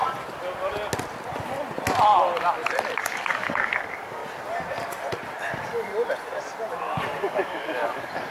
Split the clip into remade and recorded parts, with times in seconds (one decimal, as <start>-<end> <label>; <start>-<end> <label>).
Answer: 0.0-3.0 recorded; 3.0-4.2 remade; 4.2-5.5 recorded; 5.5-5.9 remade; 5.9-7.2 recorded; 7.2-8.3 remade